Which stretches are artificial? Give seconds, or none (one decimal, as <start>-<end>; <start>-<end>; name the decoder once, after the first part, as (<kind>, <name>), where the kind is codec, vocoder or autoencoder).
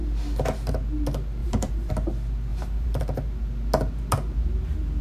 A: 1.4-1.9 (vocoder, BigVGAN v2); 2.5-3.0